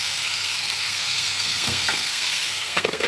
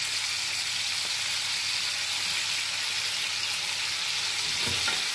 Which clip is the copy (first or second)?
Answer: first